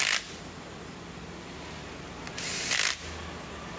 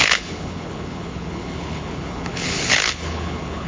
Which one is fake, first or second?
second